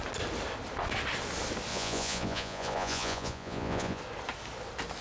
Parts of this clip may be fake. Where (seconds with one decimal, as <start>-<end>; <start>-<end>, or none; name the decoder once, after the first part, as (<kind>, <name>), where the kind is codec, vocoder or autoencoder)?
1.7-4.0 (vocoder, Vocos)